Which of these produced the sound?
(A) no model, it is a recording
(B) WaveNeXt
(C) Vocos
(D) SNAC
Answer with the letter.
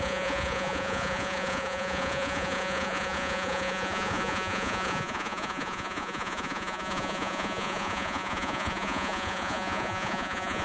C